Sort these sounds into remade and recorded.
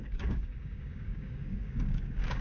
remade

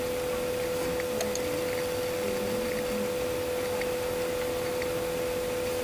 recorded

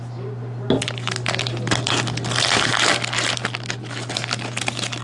recorded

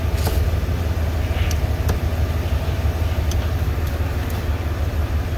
recorded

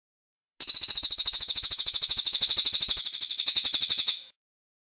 remade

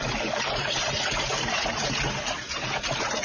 remade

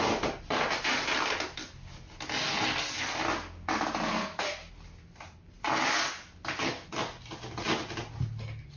recorded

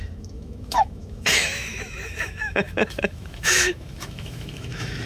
remade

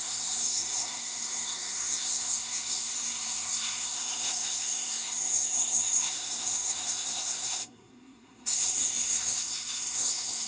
remade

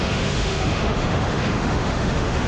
remade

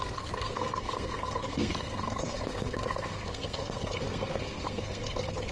remade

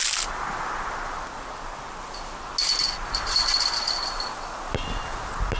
recorded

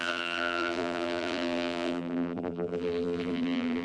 remade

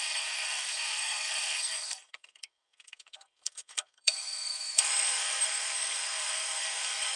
remade